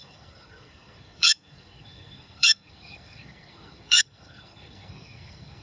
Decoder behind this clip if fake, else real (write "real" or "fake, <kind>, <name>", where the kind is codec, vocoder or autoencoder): fake, codec, SNAC